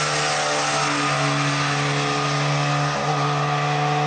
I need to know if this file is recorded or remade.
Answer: recorded